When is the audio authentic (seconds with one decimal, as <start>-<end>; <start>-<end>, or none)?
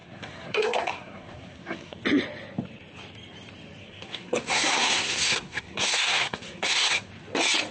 2.0-3.8; 7.1-7.7